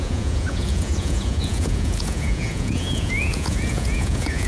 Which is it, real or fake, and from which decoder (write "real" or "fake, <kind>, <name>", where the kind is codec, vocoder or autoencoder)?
fake, vocoder, Vocos